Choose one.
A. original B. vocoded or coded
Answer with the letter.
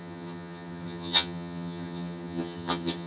B